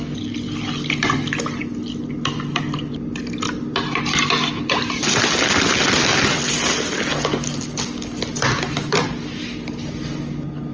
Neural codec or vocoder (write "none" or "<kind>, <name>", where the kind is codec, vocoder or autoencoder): none